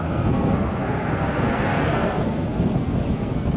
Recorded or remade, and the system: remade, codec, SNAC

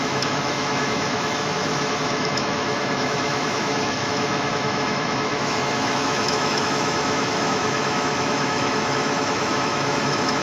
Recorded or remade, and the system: remade, autoencoder, DAC-VAE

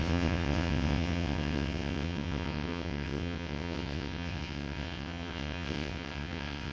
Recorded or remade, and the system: remade, vocoder, WaveNeXt